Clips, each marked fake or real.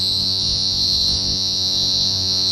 fake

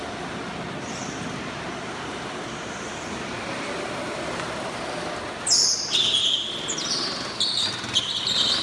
real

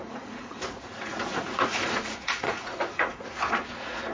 fake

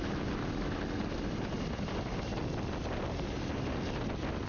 real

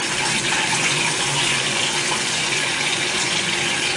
fake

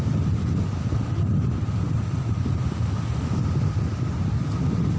real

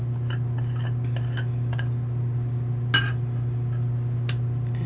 real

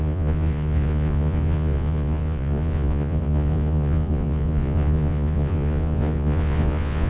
fake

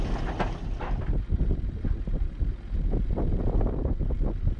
real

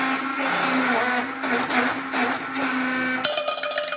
real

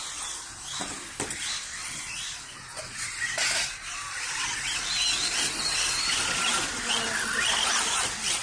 real